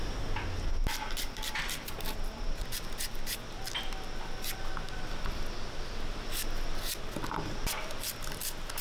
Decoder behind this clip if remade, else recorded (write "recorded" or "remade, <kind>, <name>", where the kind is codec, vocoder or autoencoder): recorded